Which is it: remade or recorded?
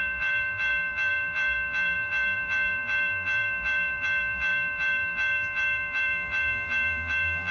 remade